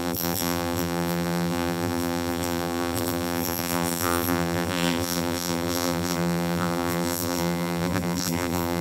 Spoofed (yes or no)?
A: yes